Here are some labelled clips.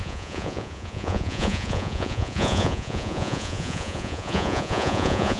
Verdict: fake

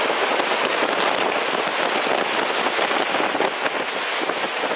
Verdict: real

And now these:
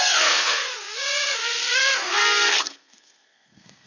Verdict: fake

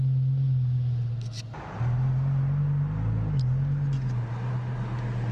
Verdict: real